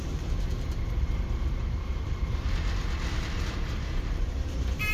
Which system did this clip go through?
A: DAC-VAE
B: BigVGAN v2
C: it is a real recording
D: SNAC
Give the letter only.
B